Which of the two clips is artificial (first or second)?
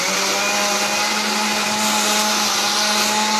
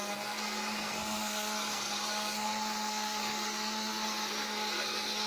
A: second